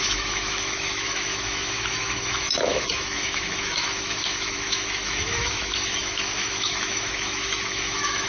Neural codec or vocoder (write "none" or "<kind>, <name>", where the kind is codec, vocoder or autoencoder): autoencoder, DAC-VAE